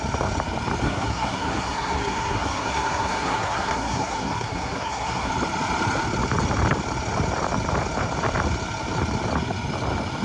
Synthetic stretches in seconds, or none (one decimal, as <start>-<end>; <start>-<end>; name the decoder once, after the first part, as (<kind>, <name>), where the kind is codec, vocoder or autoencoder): 0.8-5.3 (codec, SNAC)